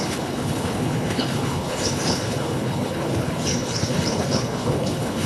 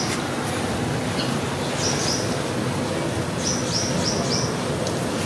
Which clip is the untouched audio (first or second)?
second